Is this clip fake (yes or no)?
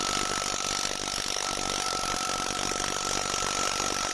no